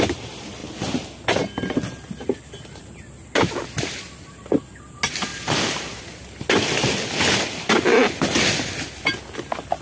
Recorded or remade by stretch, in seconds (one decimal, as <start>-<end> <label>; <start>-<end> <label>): 0.0-9.8 recorded